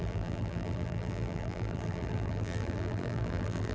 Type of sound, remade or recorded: remade